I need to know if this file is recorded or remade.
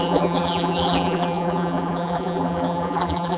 remade